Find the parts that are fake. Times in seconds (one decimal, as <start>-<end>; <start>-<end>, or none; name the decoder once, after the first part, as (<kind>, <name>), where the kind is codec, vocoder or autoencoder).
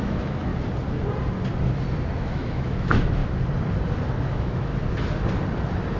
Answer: 0.0-0.5 (autoencoder, DAC-VAE); 2.2-3.2; 4.2-4.7